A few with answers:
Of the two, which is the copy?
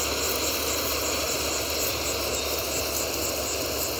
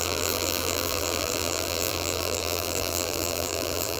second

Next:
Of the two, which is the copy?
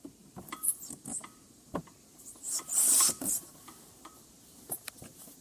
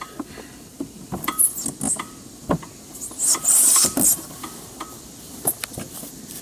first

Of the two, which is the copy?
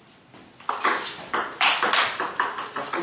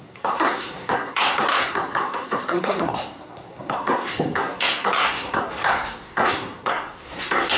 second